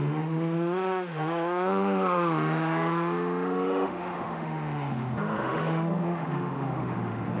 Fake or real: fake